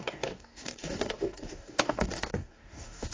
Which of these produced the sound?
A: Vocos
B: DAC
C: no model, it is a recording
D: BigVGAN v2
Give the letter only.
B